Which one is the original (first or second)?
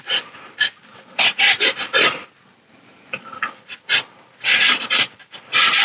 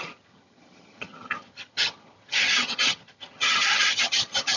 first